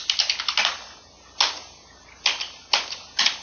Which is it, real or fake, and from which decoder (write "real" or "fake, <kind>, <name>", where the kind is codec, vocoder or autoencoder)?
real